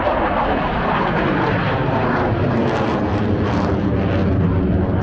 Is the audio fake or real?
real